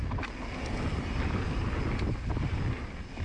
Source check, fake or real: real